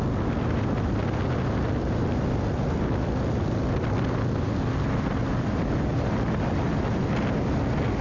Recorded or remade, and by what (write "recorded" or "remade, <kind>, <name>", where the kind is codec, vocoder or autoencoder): recorded